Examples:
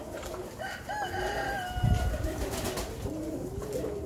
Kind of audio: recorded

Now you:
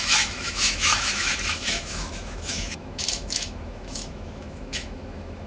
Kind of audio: remade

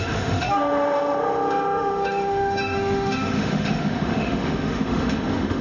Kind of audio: remade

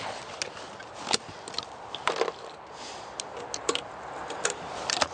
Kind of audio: recorded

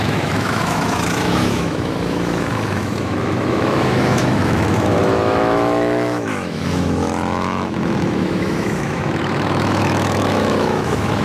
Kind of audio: remade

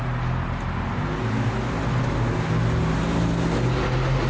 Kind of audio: recorded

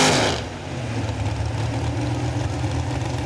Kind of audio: recorded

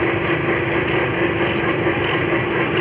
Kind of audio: recorded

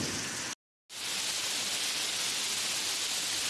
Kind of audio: recorded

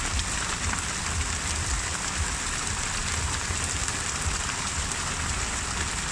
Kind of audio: recorded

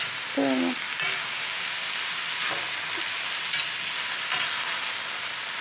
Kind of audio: recorded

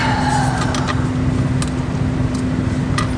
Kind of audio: recorded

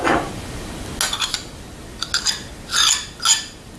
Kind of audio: recorded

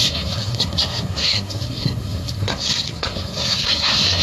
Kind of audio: remade